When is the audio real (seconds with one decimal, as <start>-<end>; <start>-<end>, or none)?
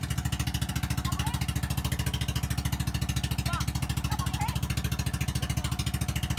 0.0-6.4